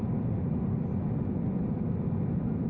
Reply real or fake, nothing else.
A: real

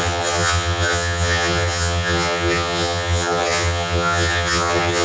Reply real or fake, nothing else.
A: fake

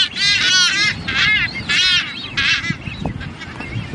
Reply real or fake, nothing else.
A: real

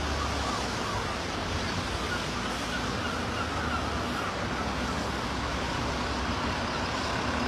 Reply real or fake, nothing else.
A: real